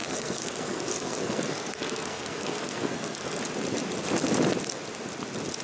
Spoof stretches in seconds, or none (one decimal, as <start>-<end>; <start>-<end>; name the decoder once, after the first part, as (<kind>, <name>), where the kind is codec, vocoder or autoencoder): 0.0-3.4 (codec, SNAC)